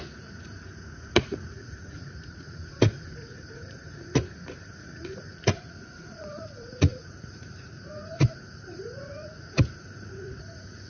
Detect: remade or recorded remade